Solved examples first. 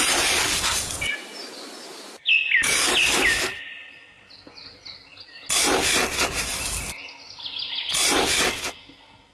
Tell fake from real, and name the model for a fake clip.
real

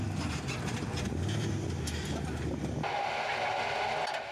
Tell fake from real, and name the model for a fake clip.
real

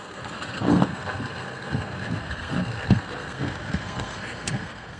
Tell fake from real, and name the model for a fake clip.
fake, codec, SNAC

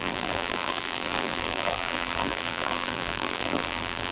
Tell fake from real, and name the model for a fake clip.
fake, vocoder, BigVGAN v2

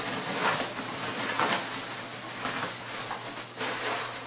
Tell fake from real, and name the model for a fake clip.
real